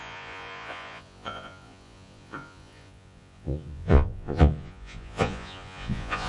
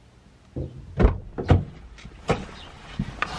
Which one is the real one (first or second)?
second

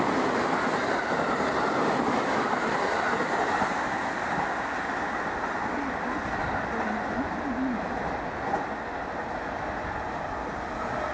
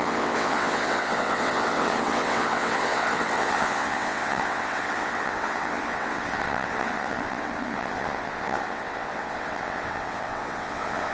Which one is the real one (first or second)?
first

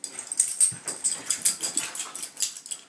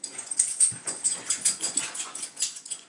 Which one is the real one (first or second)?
first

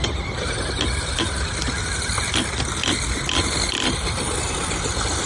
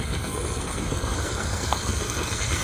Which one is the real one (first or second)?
first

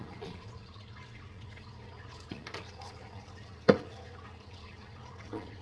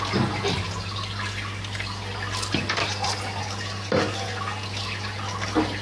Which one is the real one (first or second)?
second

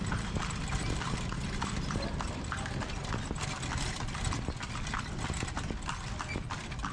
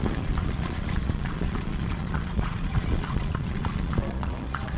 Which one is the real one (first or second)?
first